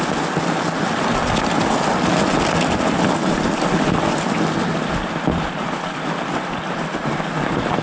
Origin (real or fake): real